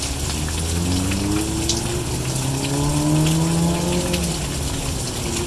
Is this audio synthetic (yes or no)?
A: no